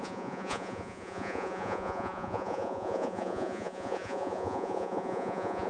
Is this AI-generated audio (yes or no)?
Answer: yes